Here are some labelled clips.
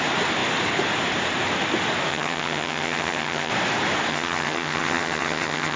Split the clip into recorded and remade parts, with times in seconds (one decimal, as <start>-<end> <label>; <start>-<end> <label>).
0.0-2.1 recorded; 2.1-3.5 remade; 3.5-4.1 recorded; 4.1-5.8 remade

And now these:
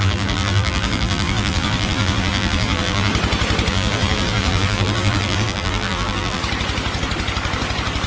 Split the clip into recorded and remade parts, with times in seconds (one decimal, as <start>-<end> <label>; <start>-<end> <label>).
0.0-3.1 remade; 3.1-3.7 recorded; 3.7-6.4 remade; 6.4-8.1 recorded

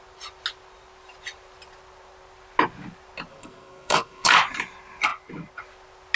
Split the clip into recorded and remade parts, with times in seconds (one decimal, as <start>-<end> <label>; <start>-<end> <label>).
0.0-3.3 recorded; 3.3-4.3 remade; 4.3-6.2 recorded